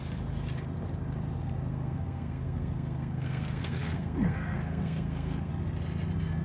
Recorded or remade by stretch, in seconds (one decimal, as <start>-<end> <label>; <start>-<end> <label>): 0.0-1.7 recorded; 1.7-5.5 remade; 5.5-6.4 recorded